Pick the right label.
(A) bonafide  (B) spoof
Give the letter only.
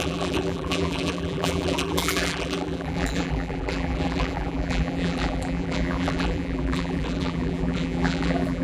B